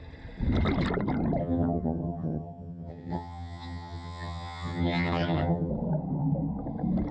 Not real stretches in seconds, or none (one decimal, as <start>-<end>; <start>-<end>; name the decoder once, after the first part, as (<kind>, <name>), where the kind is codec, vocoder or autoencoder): 1.4-5.7 (vocoder, HiFi-GAN)